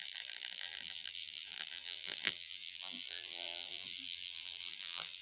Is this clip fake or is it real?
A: fake